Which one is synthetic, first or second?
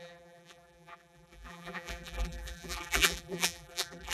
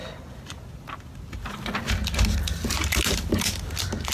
first